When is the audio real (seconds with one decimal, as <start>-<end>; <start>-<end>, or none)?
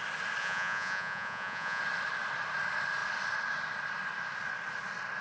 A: 0.0-0.4; 1.8-5.2